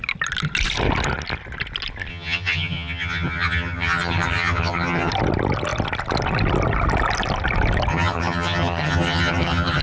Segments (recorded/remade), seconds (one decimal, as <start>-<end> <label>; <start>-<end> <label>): 0.0-2.1 recorded; 2.1-5.1 remade; 5.1-7.9 recorded; 7.9-9.8 remade

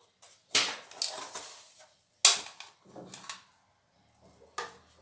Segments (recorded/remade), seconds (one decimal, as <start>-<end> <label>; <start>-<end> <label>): 0.0-5.0 recorded

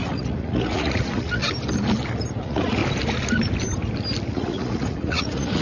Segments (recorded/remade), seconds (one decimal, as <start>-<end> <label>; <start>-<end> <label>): 0.0-1.4 remade; 1.4-2.4 recorded; 2.4-2.8 remade; 2.8-4.3 recorded; 4.3-5.6 remade

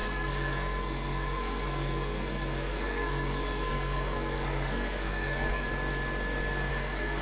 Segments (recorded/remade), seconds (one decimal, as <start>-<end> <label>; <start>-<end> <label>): 0.0-5.7 remade; 5.7-6.7 recorded; 6.7-7.2 remade

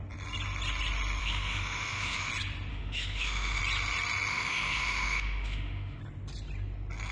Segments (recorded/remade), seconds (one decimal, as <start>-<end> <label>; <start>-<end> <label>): 0.0-1.2 recorded; 1.2-2.3 remade; 2.3-2.7 recorded; 2.7-3.6 remade; 3.6-4.3 recorded; 4.3-6.0 remade; 6.0-7.1 recorded